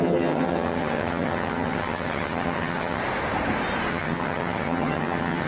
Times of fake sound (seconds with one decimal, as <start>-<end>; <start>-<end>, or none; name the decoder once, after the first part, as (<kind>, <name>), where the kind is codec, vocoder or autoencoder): 0.0-3.0 (vocoder, HiFi-GAN); 3.9-5.5